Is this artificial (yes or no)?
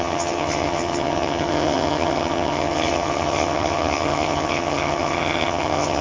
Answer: yes